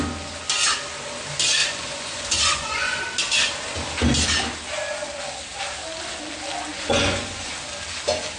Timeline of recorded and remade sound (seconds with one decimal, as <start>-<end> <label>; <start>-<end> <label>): 0.0-1.6 recorded; 1.6-3.0 remade; 3.0-6.7 recorded; 6.7-7.5 remade; 7.5-8.4 recorded